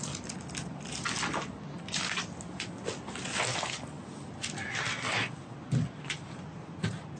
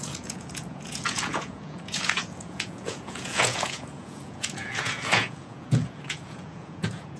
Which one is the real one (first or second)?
first